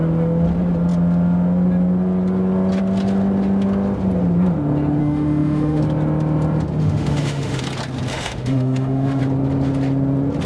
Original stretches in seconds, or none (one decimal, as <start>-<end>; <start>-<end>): 0.0-5.0; 5.8-6.8; 7.6-8.1; 9.2-10.5